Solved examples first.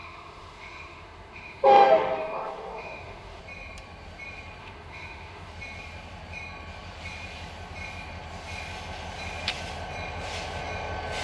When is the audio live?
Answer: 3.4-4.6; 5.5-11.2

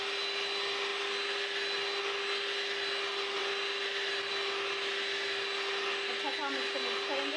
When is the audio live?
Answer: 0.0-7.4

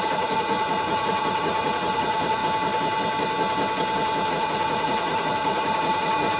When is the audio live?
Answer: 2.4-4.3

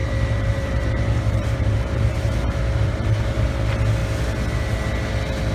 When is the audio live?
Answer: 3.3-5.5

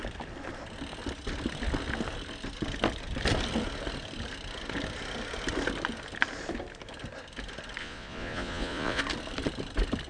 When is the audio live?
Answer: 0.0-7.8; 9.0-10.1

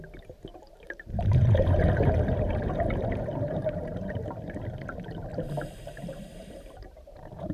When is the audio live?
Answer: 0.0-0.5; 4.3-5.3

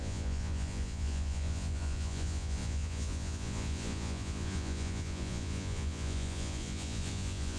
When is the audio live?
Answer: none

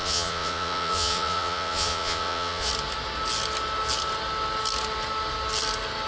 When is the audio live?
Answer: 2.7-6.1